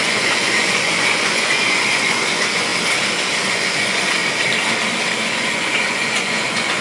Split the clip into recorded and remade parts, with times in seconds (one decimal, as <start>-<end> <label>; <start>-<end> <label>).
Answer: 0.0-2.7 remade; 2.7-3.5 recorded; 3.5-4.2 remade; 4.2-5.2 recorded; 5.2-6.8 remade